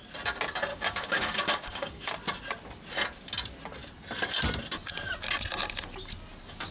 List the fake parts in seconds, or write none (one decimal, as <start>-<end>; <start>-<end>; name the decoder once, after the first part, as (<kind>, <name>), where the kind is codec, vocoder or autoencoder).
0.7-2.1 (codec, DAC)